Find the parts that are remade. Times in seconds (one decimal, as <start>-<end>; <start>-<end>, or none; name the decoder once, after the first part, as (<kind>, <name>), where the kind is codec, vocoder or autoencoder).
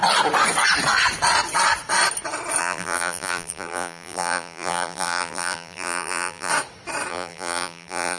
2.6-6.5 (vocoder, BigVGAN v2); 7.1-8.2